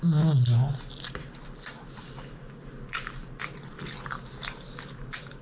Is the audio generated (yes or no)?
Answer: no